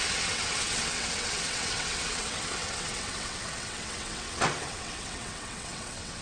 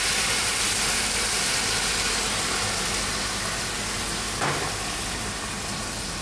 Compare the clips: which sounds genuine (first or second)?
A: second